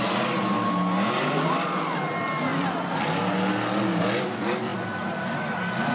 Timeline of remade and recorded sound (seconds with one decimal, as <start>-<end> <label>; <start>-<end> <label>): 0.0-5.9 recorded